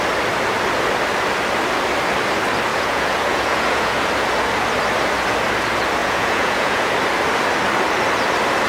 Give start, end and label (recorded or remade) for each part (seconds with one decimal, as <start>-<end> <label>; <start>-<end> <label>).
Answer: 0.0-2.7 recorded; 2.7-4.0 remade; 4.0-6.0 recorded; 6.0-6.9 remade; 6.9-8.7 recorded